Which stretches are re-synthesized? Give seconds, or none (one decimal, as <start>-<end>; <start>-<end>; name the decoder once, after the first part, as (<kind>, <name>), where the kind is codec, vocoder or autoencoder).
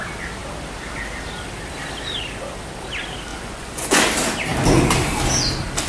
3.3-4.0 (vocoder, Vocos)